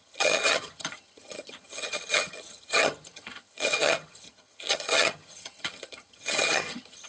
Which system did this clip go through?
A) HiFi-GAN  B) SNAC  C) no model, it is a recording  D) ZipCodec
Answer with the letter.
A